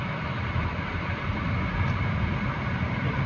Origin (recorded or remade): recorded